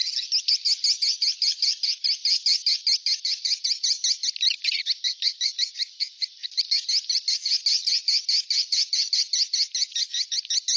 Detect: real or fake real